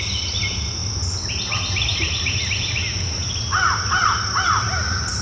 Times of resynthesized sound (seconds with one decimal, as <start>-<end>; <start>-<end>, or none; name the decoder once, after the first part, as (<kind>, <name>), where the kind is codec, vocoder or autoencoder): none